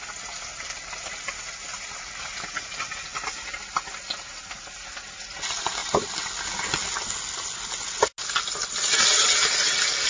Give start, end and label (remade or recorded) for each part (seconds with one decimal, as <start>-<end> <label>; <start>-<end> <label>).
0.0-10.1 recorded